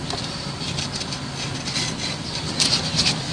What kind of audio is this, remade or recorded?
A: recorded